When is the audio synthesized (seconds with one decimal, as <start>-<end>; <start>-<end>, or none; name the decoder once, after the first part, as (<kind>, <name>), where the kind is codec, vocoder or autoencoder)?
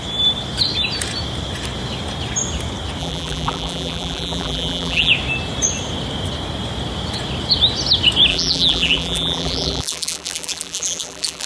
3.0-5.1 (vocoder, BigVGAN v2); 8.3-11.5